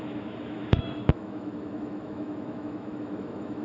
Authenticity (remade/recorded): remade